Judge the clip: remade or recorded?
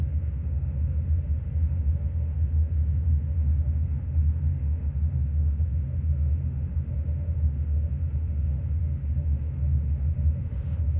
remade